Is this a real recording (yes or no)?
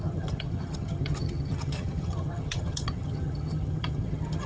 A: no